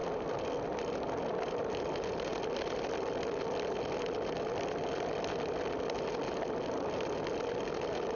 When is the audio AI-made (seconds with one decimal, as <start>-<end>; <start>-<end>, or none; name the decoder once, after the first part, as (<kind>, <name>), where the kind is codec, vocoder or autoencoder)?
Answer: none